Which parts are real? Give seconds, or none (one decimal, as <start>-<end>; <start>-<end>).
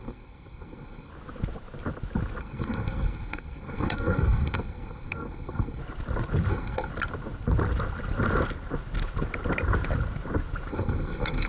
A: 1.1-2.4; 5.8-6.5; 6.9-10.7